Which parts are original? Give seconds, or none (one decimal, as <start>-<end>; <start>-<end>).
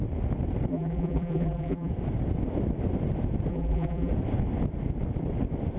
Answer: 0.0-0.7; 1.9-3.5; 4.1-5.8